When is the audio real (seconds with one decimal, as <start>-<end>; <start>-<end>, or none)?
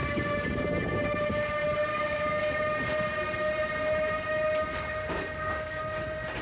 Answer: 1.5-1.9; 2.6-4.7; 5.8-6.4